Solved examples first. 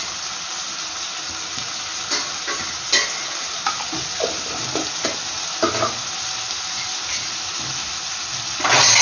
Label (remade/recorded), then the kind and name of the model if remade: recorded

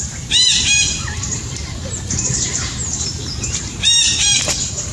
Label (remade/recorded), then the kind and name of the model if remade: remade, vocoder, BigVGAN v2